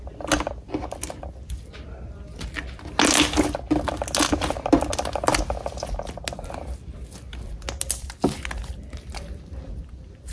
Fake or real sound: real